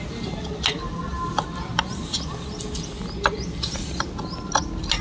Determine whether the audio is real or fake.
real